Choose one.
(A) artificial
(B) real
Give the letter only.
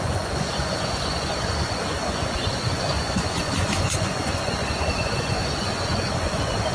A